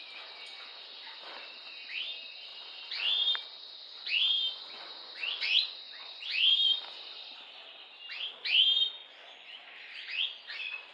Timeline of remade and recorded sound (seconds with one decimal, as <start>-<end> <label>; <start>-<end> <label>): 0.0-4.5 recorded; 4.5-6.2 remade; 6.2-9.0 recorded; 9.0-9.6 remade; 9.6-10.9 recorded